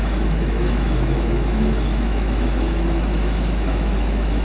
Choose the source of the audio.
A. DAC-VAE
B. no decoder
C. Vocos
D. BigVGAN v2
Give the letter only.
A